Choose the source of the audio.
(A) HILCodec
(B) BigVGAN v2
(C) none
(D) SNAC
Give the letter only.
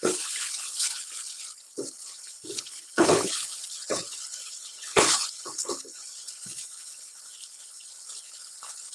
A